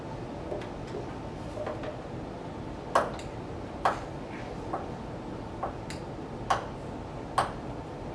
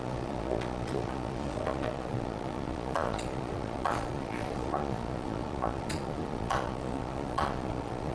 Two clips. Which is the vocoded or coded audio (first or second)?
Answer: second